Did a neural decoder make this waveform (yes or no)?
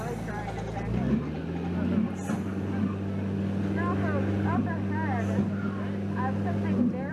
no